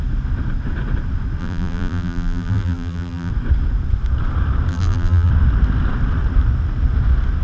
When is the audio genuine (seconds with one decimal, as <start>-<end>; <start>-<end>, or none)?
0.0-1.4; 3.3-4.7; 5.3-7.4